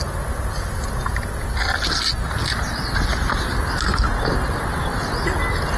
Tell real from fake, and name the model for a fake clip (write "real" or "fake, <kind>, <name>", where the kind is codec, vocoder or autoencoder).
real